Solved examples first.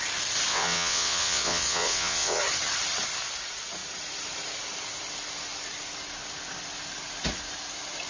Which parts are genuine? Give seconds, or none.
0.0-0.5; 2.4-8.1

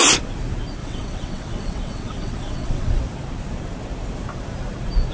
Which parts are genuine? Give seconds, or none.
0.0-0.8; 3.0-5.1

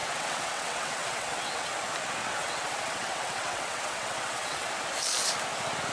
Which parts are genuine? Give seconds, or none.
1.7-2.2; 4.7-5.9

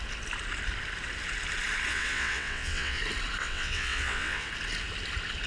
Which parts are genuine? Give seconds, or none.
0.0-1.9; 3.0-3.4; 4.5-5.5

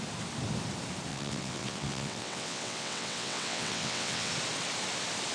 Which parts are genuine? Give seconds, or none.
0.0-1.1; 4.3-5.3

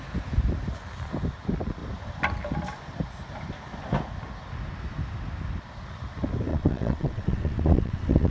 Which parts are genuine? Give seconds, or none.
0.0-6.5